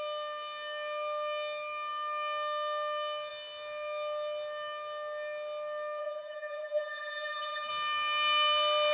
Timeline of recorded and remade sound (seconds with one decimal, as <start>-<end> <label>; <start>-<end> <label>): 0.0-6.0 recorded; 6.0-7.7 remade; 7.7-8.9 recorded